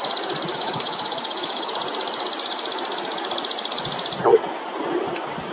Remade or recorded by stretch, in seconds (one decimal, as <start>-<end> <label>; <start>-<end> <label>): 0.0-0.5 recorded; 0.5-1.7 remade; 1.7-5.5 recorded